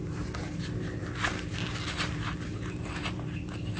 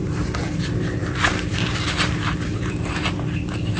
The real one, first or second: first